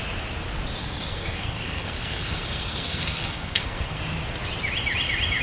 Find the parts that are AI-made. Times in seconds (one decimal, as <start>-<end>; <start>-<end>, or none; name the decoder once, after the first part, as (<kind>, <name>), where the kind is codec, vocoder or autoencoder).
0.8-4.0 (codec, SNAC)